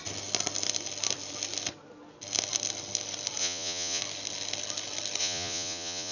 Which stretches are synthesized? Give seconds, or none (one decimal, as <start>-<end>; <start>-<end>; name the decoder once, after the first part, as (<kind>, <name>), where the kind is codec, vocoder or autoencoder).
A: 3.4-4.0 (vocoder, Vocos); 5.2-6.1